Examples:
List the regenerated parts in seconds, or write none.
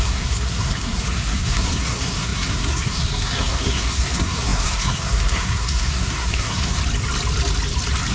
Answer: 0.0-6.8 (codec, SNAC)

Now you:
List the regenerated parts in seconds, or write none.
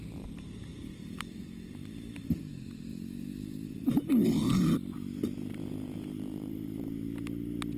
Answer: 0.7-1.2 (vocoder, BigVGAN v2); 1.8-2.4; 2.9-3.9; 5.5-6.8